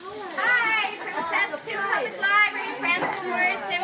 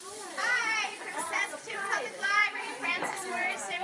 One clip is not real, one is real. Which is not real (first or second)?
second